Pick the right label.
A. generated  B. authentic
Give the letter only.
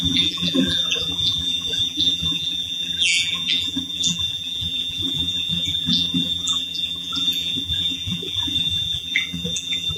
A